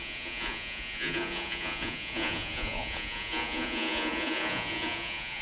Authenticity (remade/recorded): remade